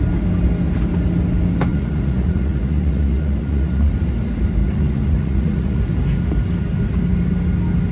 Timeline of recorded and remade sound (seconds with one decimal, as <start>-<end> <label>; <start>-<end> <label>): 0.0-1.7 recorded; 1.7-3.9 remade; 3.9-4.6 recorded; 4.6-5.8 remade; 5.8-7.9 recorded